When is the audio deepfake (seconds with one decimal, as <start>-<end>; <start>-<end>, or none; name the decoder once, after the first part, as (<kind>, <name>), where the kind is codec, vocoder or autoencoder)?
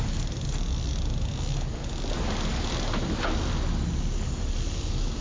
none